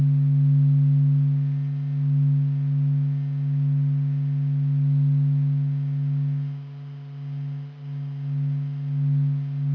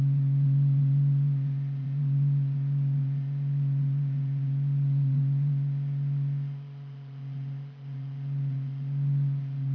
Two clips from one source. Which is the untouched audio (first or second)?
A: first